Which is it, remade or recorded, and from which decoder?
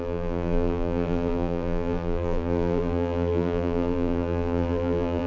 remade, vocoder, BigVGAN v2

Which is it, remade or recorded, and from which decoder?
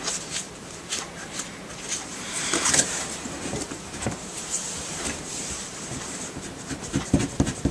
remade, vocoder, BigVGAN v2